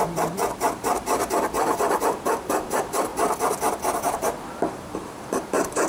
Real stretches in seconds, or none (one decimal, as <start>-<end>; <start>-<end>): 3.1-4.0